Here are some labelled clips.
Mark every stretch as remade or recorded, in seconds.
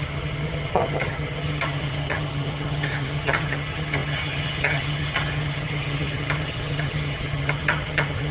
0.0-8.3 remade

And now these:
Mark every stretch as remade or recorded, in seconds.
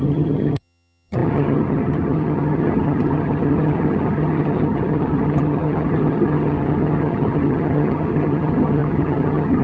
0.0-9.6 remade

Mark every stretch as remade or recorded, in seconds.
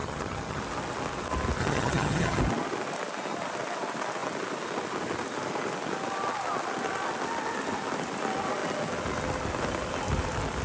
0.0-0.6 remade; 0.6-1.6 recorded; 1.6-2.4 remade; 2.4-10.6 recorded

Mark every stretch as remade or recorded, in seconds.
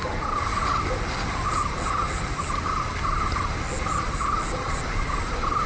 0.0-5.7 recorded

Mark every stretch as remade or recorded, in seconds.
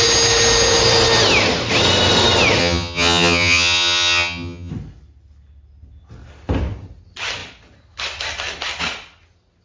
0.0-2.6 recorded; 2.6-4.7 remade; 4.7-9.6 recorded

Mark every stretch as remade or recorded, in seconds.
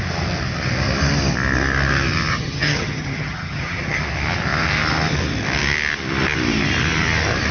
0.0-2.3 recorded; 2.3-4.0 remade; 4.0-7.5 recorded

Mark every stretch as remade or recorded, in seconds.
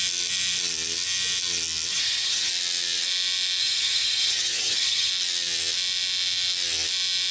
0.0-1.9 recorded; 1.9-2.5 remade; 2.5-3.6 recorded; 3.6-5.1 remade; 5.1-7.3 recorded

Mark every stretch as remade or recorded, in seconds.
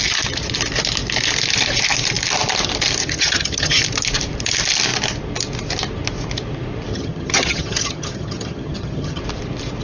0.0-3.0 recorded; 3.0-3.8 remade; 3.8-6.9 recorded; 6.9-9.2 remade; 9.2-9.8 recorded